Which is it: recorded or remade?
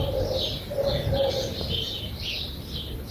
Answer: recorded